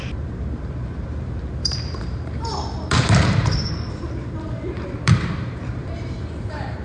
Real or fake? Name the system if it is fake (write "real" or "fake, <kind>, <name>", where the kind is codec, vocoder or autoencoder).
fake, vocoder, BigVGAN v2